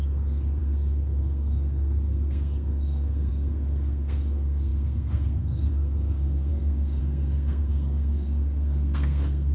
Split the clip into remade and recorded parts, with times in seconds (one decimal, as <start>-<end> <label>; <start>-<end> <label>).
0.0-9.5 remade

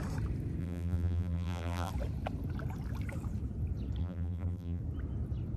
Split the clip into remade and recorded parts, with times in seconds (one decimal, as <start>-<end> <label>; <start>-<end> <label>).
0.0-0.6 recorded; 0.6-1.9 remade; 1.9-4.0 recorded; 4.0-4.8 remade; 4.8-5.6 recorded

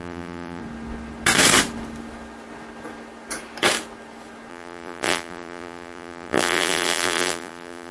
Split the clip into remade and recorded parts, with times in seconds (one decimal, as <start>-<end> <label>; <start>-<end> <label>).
0.0-0.6 remade; 0.6-4.5 recorded; 4.5-7.9 remade